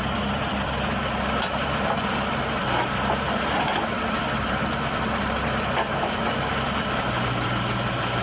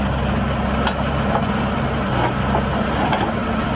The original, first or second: second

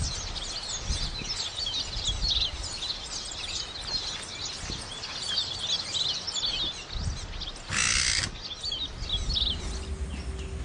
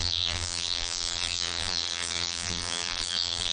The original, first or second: first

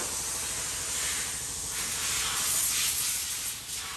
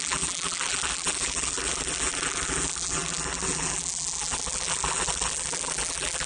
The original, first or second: first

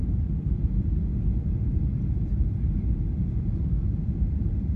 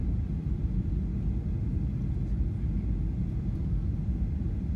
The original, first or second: second